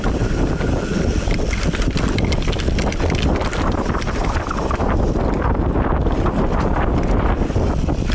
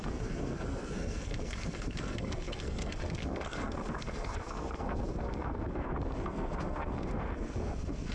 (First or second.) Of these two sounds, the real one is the first